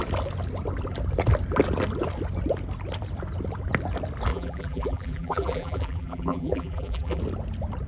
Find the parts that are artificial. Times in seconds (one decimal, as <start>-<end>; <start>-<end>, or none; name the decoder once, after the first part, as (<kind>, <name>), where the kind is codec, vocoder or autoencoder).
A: 4.3-7.2 (vocoder, BigVGAN v2)